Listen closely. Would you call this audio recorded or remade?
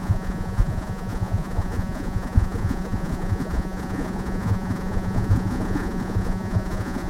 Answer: remade